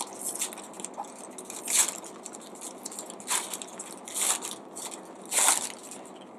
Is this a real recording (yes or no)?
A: yes